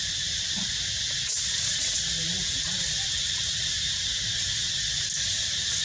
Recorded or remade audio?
recorded